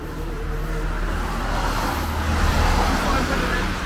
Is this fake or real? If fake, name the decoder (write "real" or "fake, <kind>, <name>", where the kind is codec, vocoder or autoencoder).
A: real